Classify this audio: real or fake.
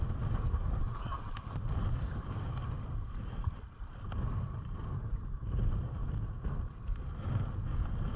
real